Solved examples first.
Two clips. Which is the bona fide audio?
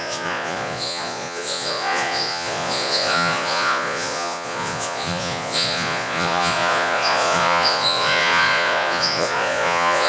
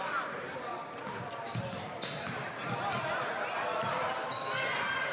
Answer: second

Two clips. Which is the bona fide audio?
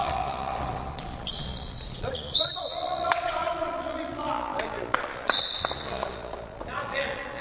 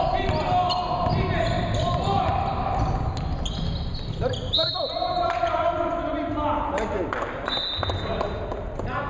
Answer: second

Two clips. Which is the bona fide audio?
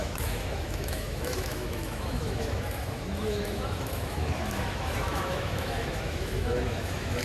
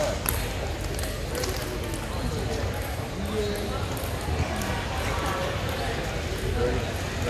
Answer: second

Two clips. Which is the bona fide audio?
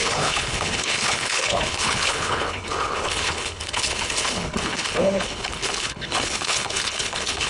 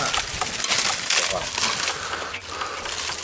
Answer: second